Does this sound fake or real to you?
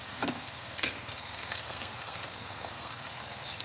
fake